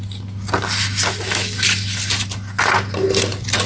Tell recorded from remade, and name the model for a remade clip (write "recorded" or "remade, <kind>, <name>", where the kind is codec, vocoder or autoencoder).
recorded